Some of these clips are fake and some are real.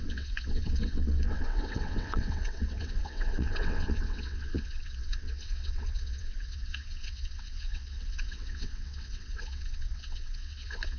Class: fake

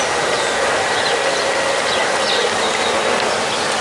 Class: real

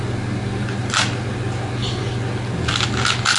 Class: real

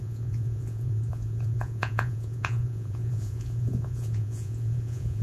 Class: fake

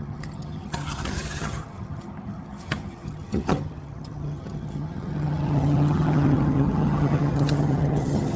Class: fake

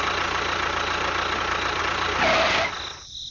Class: real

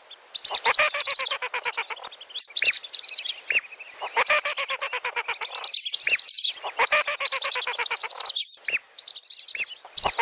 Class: real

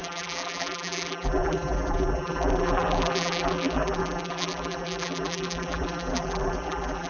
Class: fake